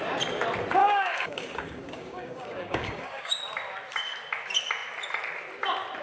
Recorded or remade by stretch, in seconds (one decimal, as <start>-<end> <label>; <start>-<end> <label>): 0.0-0.8 recorded; 0.8-3.4 remade; 3.4-6.0 recorded